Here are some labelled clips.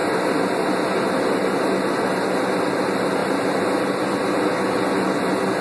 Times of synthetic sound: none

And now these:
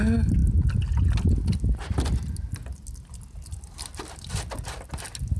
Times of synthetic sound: none

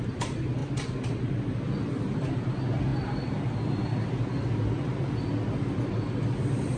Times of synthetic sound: none

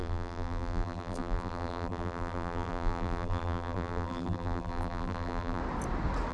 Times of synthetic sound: 0.0-5.6

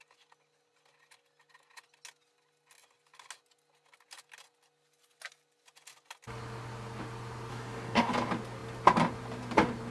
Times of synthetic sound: 7.5-8.1

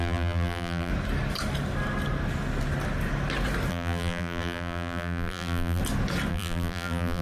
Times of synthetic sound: 0.0-0.9; 3.7-5.8; 6.3-7.2